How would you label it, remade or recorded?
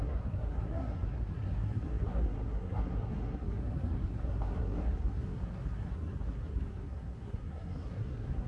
remade